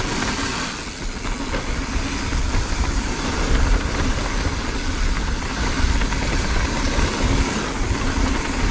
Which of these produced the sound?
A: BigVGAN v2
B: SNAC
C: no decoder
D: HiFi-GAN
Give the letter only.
C